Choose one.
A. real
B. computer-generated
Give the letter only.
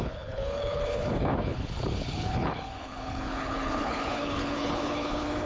B